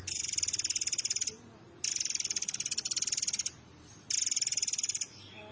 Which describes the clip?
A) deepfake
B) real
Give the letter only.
B